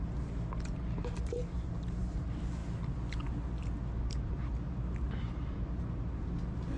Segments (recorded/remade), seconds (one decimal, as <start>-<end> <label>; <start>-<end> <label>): 0.0-2.6 remade; 2.6-4.0 recorded; 4.0-6.8 remade